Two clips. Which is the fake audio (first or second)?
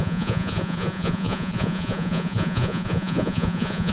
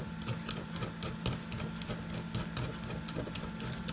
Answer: first